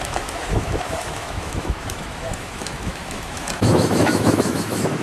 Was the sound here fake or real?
fake